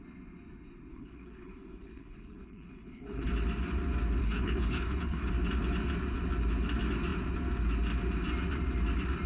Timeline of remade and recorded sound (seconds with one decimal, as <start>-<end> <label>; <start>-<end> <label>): 0.0-0.9 recorded; 0.9-3.3 remade; 3.3-4.2 recorded; 4.2-5.3 remade; 5.3-9.3 recorded